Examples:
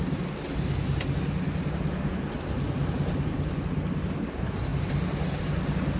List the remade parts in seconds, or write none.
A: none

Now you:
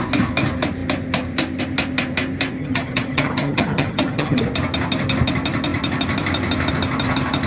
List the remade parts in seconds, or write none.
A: 2.6-4.4 (vocoder, HiFi-GAN)

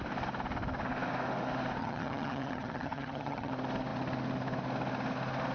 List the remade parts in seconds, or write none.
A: 1.8-3.5 (vocoder, HiFi-GAN)

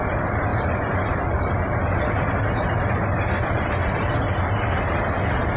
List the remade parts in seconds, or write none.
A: none

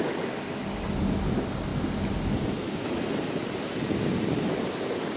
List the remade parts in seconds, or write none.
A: none